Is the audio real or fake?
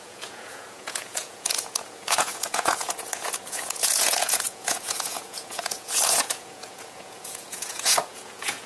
fake